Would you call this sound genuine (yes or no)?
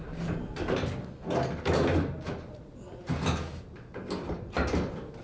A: yes